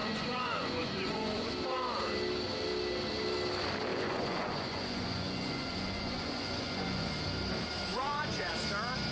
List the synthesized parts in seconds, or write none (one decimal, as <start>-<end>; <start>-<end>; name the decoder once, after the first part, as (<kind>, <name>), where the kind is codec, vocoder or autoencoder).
0.0-1.5 (vocoder, Vocos); 3.9-7.1; 7.9-8.5